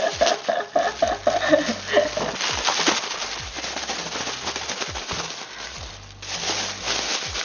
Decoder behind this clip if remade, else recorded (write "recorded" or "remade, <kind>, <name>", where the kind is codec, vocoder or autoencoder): recorded